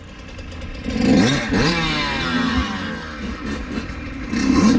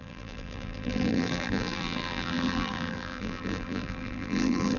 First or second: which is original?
first